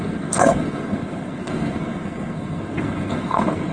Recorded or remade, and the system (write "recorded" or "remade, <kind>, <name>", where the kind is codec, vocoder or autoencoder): remade, codec, SNAC